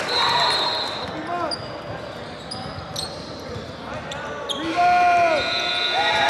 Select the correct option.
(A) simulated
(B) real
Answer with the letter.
B